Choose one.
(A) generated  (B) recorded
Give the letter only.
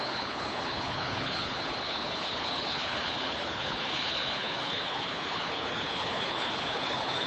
A